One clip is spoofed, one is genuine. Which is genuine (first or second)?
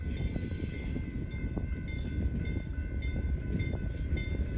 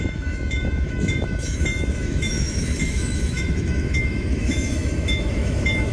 first